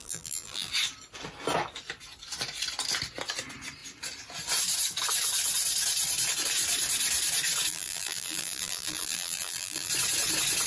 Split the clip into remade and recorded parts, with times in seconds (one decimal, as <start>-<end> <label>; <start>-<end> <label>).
0.0-0.7 remade; 0.7-7.7 recorded; 7.7-9.9 remade; 9.9-10.7 recorded